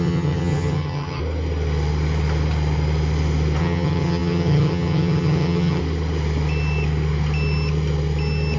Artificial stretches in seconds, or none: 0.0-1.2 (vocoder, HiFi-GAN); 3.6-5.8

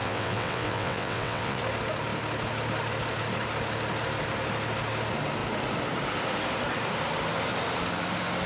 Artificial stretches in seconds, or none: 0.0-1.6 (vocoder, WaveNeXt)

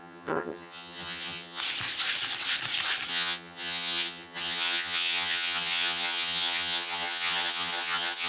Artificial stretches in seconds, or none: 0.0-1.6 (vocoder, HiFi-GAN); 3.1-8.3

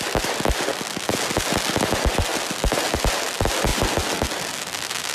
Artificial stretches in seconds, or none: none

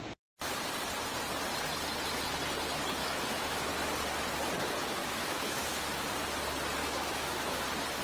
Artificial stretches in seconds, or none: 3.0-3.7 (autoencoder, DAC-VAE); 5.0-5.7; 6.8-7.6